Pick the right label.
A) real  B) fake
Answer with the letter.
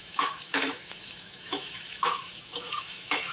B